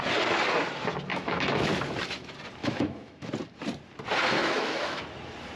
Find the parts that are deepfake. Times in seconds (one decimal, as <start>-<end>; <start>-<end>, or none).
1.1-1.7; 2.6-3.3; 4.4-5.0